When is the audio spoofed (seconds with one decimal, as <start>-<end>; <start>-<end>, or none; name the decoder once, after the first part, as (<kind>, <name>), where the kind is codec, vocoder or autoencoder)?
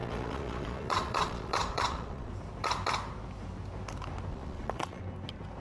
0.0-2.3 (vocoder, Vocos); 4.3-5.0